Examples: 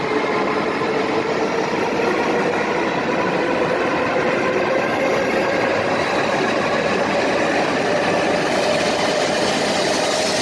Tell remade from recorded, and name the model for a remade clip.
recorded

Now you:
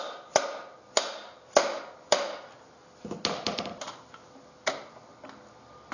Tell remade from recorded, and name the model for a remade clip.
recorded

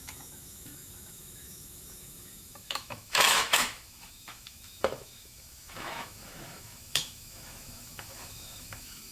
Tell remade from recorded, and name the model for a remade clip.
remade, autoencoder, DAC-VAE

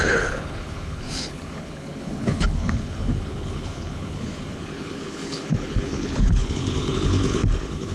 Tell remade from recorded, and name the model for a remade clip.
remade, codec, HILCodec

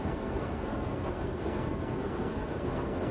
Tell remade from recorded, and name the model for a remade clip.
remade, codec, SNAC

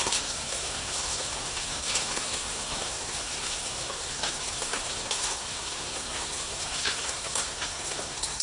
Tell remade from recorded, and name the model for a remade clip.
remade, codec, SNAC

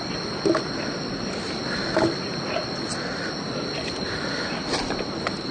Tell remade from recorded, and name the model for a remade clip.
recorded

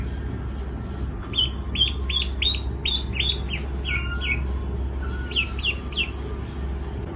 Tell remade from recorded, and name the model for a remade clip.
recorded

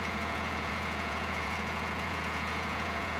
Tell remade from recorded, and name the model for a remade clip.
remade, vocoder, Vocos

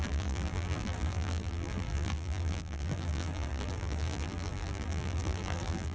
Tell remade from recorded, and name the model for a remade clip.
remade, vocoder, BigVGAN v2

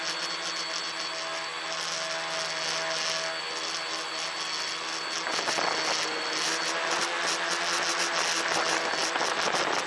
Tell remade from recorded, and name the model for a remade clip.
recorded